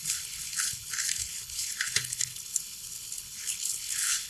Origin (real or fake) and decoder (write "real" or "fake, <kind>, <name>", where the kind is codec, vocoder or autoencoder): fake, codec, HILCodec